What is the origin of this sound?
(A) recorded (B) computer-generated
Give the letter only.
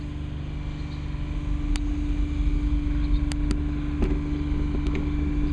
A